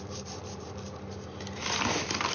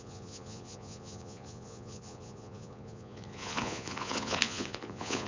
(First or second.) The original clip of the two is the first